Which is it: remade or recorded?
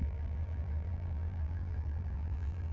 remade